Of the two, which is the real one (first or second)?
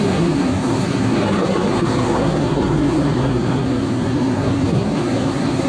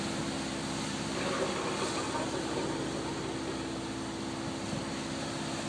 second